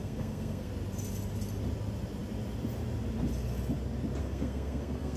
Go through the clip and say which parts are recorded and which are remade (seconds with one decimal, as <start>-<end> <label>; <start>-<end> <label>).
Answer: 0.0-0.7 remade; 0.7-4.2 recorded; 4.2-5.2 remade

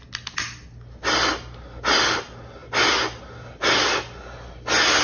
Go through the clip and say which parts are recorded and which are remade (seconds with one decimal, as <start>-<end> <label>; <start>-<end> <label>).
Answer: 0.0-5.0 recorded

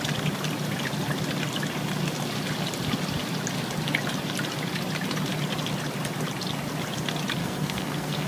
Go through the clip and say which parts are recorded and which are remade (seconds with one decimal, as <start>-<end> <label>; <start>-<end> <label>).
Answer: 0.0-7.4 recorded; 7.4-8.3 remade